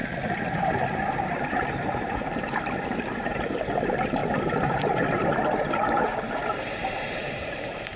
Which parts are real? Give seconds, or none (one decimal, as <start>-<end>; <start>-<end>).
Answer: 0.0-1.2; 4.2-4.7; 5.2-5.8